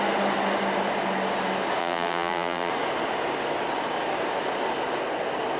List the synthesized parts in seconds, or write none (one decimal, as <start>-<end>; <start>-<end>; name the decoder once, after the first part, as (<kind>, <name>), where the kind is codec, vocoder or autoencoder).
1.8-2.7 (vocoder, BigVGAN v2)